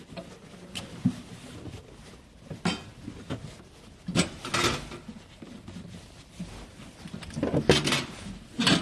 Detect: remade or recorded recorded